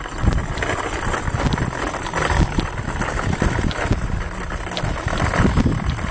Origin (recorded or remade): recorded